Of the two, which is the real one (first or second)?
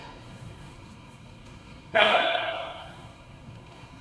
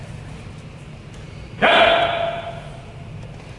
second